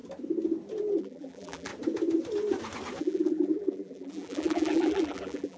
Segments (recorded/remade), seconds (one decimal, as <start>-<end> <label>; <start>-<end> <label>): 0.0-1.0 recorded; 1.0-1.7 remade; 1.7-3.0 recorded; 3.0-5.6 remade